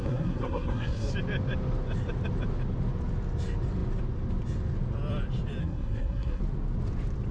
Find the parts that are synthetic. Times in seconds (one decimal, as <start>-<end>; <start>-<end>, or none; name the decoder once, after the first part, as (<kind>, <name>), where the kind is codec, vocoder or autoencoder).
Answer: 0.0-1.1 (codec, SNAC); 5.6-6.4